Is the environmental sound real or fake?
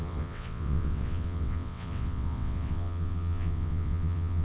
fake